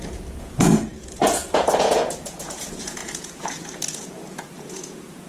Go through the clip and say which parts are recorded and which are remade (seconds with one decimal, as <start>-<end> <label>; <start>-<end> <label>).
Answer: 0.0-5.3 remade